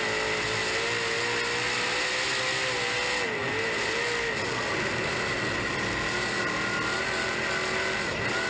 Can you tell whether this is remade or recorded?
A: recorded